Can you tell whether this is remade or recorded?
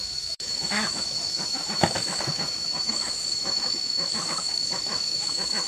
remade